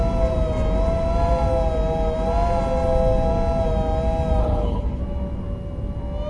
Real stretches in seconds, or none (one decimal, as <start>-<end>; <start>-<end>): 0.0-4.4; 5.0-6.3